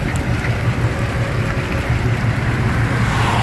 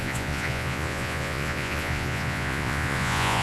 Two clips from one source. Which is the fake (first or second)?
second